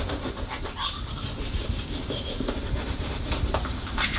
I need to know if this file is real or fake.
fake